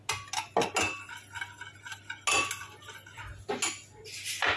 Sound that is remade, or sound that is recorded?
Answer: recorded